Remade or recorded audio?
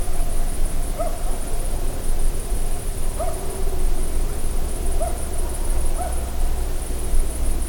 recorded